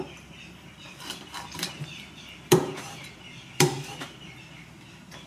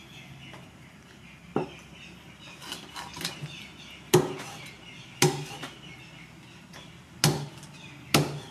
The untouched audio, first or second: second